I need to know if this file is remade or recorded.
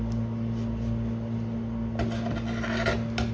recorded